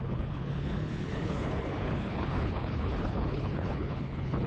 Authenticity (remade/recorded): remade